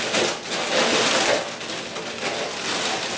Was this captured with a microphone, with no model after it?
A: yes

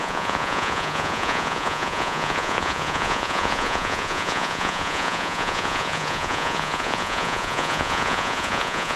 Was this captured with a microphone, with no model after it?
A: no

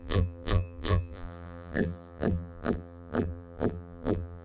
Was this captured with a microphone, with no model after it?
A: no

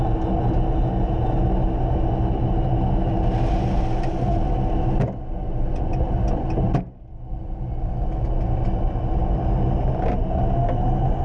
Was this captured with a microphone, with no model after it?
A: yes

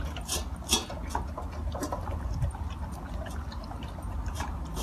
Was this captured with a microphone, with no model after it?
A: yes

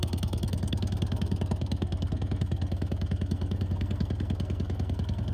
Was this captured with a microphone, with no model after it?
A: no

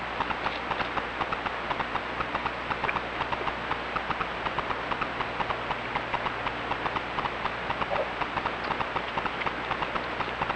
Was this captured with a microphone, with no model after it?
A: yes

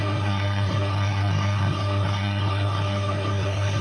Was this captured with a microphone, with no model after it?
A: no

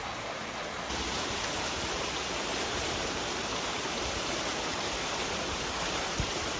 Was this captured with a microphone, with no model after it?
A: no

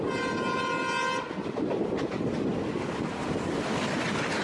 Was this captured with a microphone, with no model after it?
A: yes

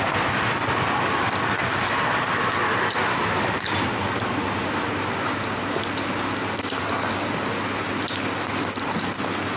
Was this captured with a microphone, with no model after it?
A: yes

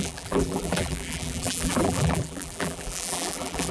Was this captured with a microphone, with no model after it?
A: no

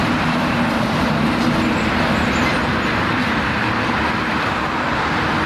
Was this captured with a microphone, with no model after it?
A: yes